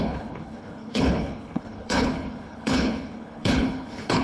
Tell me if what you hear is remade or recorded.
remade